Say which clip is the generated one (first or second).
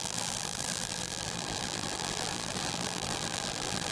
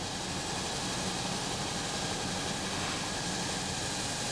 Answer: first